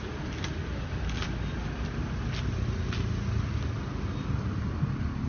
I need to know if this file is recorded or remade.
recorded